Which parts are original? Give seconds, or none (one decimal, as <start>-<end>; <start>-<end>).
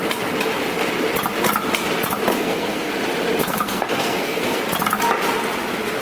0.0-2.3; 2.9-3.4; 4.6-6.0